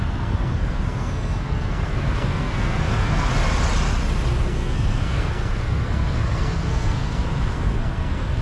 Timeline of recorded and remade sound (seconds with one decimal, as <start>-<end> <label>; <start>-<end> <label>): 0.0-3.3 remade; 3.3-4.4 recorded; 4.4-8.4 remade